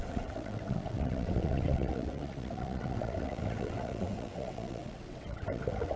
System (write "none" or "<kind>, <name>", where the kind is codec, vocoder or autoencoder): vocoder, WaveNeXt